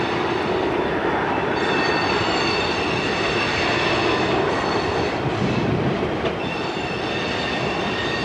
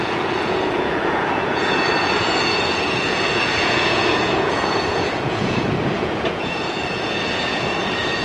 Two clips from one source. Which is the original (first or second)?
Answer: first